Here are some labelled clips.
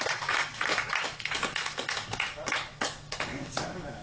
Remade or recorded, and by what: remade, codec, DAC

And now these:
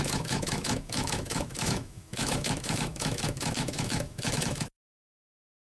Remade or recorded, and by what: remade, autoencoder, DAC-VAE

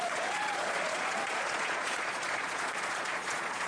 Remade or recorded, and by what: remade, vocoder, Vocos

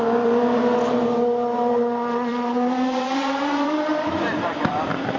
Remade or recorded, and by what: remade, vocoder, BigVGAN v2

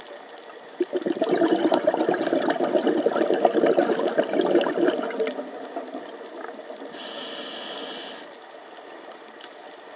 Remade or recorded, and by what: recorded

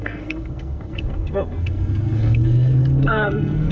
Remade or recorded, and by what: remade, codec, SNAC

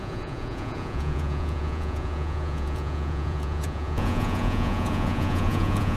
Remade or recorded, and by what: remade, vocoder, Vocos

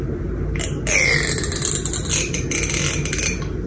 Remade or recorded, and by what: recorded